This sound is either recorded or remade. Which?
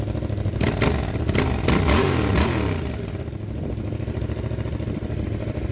recorded